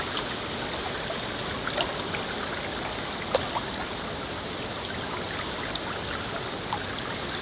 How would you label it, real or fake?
real